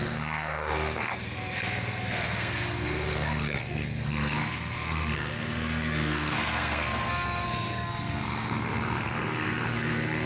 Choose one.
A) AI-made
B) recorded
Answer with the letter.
A